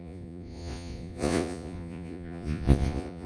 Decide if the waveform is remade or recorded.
remade